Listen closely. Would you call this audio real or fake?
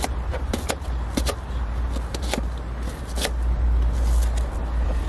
real